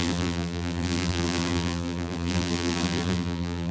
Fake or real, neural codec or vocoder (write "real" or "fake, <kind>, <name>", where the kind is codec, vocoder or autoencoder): fake, vocoder, BigVGAN v2